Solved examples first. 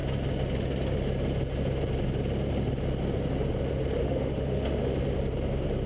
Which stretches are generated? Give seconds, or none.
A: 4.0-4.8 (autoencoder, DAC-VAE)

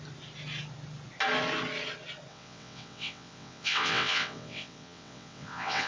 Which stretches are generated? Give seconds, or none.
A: 2.3-5.9 (vocoder, WaveNeXt)

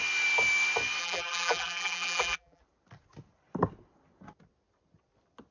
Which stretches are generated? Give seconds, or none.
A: 1.0-2.6 (vocoder, BigVGAN v2)

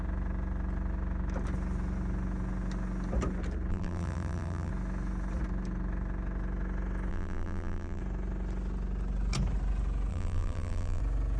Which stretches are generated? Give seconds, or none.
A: 3.7-4.7 (vocoder, BigVGAN v2); 7.1-8.0; 10.1-11.0

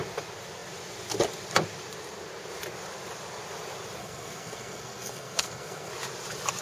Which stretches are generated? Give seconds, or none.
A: 4.0-5.9 (codec, SNAC)

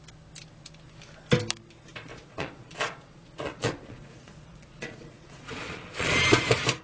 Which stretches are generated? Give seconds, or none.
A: 2.1-6.1 (vocoder, Vocos)

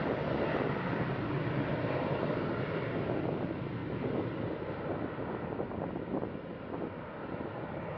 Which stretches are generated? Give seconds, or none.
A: none

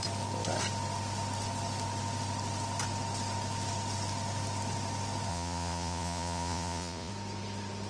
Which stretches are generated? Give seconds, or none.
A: 5.3-7.1 (vocoder, Vocos)